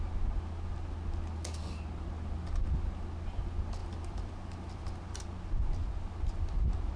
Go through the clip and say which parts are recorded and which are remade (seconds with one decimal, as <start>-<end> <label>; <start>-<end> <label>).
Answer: 0.0-3.8 recorded; 3.8-5.2 remade; 5.2-7.0 recorded